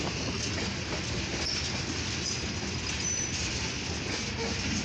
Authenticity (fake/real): real